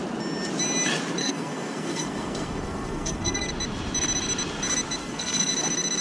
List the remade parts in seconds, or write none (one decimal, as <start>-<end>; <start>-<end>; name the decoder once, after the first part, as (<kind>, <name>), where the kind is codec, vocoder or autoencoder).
1.2-3.5 (codec, SNAC); 5.0-5.5